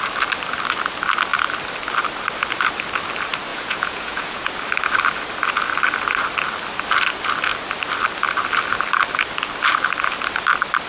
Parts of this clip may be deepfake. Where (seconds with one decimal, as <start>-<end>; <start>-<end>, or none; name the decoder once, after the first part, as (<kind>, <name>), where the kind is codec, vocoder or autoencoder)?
3.5-4.5 (vocoder, Vocos)